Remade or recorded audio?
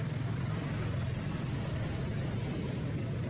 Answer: recorded